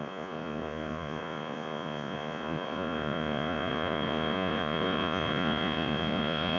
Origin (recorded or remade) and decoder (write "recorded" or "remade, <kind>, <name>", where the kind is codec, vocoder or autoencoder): remade, vocoder, Vocos